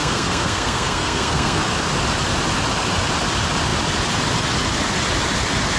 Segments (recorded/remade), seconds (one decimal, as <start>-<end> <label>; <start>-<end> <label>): 0.0-1.6 remade; 1.6-5.8 recorded